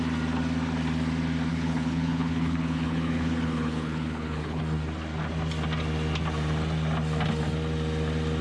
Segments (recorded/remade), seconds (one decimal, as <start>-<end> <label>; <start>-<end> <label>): 0.0-1.5 recorded; 1.5-4.6 remade; 4.6-8.4 recorded